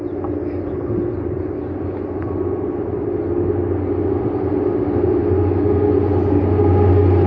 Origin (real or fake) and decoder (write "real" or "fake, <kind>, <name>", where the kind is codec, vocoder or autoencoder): real